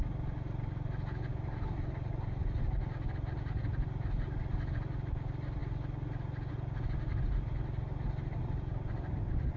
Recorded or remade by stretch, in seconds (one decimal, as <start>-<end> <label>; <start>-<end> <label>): 0.0-9.6 recorded